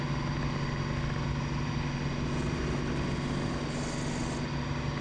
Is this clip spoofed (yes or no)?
no